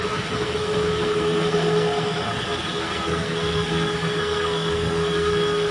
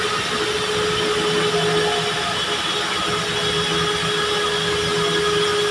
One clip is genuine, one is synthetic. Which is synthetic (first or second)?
first